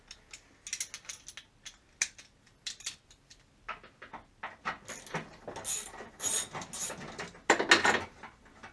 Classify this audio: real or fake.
real